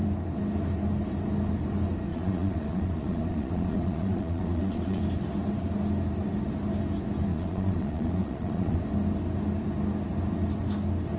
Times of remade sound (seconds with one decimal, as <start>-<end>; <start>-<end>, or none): 2.1-5.0; 7.3-8.8